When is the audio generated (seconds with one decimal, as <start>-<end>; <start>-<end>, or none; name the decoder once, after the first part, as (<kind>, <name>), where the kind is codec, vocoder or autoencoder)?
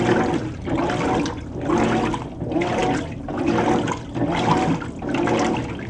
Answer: none